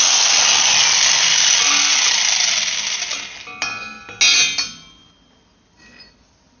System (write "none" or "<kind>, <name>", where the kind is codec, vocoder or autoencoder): none